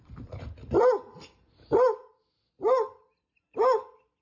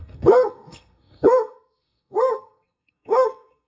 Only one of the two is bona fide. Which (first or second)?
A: first